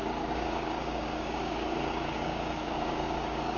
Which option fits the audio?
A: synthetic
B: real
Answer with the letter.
A